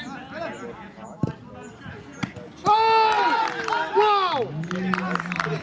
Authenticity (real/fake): real